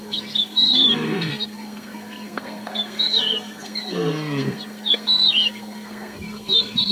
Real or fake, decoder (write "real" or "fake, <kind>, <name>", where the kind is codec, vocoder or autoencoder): fake, codec, SNAC